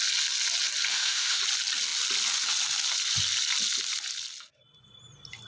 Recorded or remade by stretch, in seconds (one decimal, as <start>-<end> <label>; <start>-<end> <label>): 0.0-0.9 recorded; 0.9-1.4 remade; 1.4-5.5 recorded